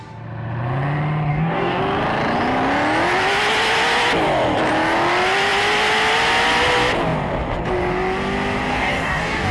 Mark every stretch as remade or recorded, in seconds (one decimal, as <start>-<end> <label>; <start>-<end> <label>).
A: 0.0-1.3 recorded; 1.3-1.8 remade; 1.8-8.7 recorded; 8.7-9.5 remade